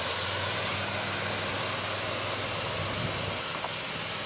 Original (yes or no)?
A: yes